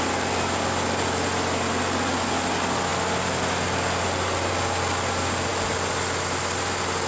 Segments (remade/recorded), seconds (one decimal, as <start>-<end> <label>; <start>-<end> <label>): 0.0-7.1 recorded